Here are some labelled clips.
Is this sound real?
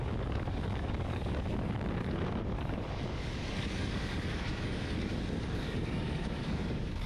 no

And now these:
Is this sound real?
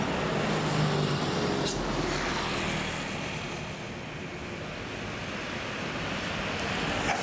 yes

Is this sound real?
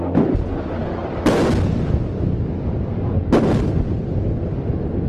yes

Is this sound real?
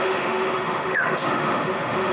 no